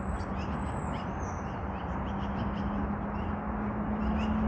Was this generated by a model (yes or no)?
no